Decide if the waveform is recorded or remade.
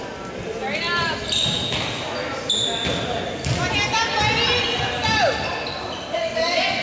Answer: recorded